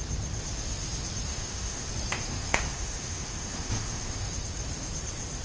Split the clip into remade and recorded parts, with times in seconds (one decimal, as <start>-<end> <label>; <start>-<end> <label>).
0.0-1.3 recorded; 1.3-1.9 remade; 1.9-2.3 recorded; 2.3-4.3 remade; 4.3-5.4 recorded